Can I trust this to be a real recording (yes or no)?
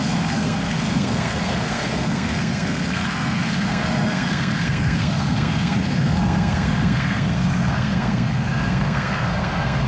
no